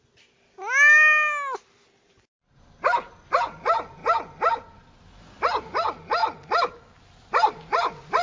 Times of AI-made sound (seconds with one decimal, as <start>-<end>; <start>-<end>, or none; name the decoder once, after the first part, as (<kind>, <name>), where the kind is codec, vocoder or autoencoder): none